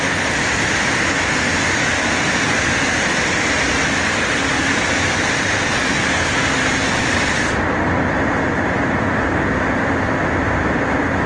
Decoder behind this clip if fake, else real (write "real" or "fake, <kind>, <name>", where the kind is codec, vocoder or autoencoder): real